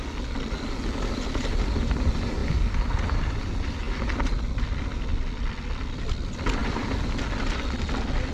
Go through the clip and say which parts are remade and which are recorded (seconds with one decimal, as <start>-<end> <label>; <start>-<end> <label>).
0.0-8.3 recorded